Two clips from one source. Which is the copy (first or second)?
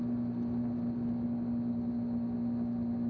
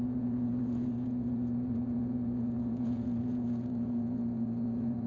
second